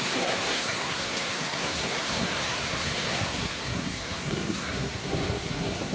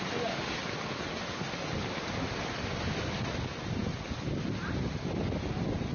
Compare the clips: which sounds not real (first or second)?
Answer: first